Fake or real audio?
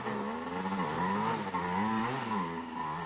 real